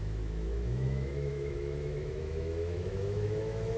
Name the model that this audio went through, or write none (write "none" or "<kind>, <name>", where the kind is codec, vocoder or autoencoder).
autoencoder, DAC-VAE